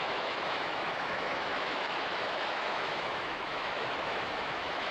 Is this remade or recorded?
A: remade